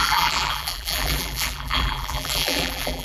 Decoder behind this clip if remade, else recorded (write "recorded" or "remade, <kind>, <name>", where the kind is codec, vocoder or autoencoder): remade, vocoder, BigVGAN v2